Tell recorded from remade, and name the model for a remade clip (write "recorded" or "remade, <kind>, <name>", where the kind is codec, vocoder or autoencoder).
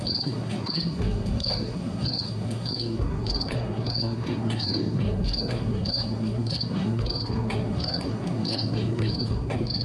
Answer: remade, codec, SNAC